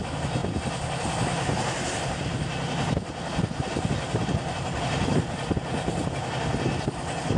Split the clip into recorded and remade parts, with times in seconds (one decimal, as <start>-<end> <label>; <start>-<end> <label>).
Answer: 0.0-7.4 recorded